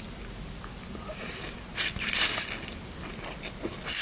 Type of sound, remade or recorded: recorded